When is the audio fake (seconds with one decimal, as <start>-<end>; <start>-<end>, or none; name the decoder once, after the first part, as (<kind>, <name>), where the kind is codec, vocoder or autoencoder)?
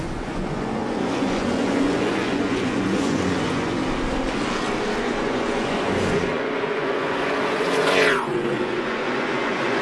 0.0-3.8 (vocoder, Vocos); 5.0-9.8